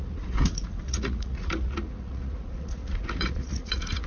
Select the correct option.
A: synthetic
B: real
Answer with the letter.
A